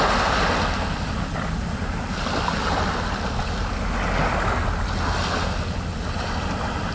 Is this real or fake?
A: real